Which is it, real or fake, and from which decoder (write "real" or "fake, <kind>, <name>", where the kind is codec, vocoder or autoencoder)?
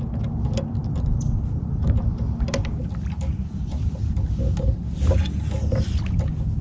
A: real